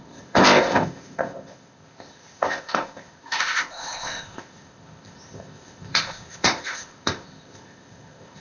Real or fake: fake